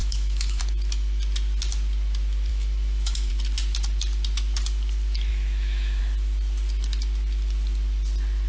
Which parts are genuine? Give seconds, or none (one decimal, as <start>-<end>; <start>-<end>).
0.6-2.5; 3.3-5.3; 6.0-8.5